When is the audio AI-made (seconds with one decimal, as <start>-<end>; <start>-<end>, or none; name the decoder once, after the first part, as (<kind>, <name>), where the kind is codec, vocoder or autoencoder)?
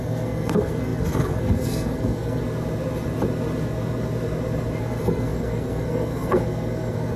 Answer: 0.0-2.4 (codec, SNAC); 4.8-7.2